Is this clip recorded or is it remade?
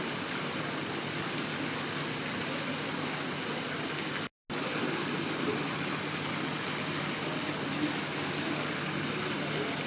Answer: recorded